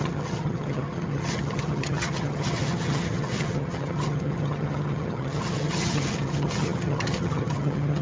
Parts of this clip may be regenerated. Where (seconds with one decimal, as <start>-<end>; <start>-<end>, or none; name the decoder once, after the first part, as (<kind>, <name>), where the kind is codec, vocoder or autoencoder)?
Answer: 0.0-8.0 (vocoder, HiFi-GAN)